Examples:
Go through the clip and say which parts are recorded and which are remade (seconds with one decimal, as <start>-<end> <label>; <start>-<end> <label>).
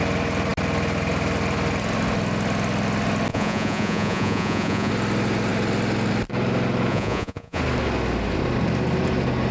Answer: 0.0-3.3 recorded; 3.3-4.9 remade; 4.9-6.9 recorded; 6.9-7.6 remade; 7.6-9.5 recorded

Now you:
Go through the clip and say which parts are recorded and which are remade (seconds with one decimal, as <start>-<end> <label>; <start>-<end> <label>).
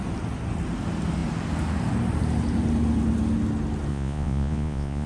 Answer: 0.0-3.9 recorded; 3.9-5.1 remade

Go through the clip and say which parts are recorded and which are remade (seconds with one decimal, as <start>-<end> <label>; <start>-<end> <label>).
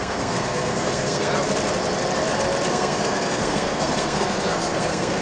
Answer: 0.0-1.3 remade; 1.3-2.7 recorded; 2.7-5.2 remade